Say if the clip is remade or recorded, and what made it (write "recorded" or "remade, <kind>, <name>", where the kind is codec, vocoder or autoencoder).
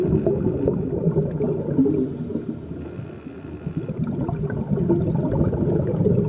recorded